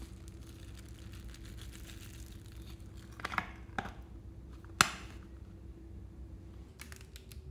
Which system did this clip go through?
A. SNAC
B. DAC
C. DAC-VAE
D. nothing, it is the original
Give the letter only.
D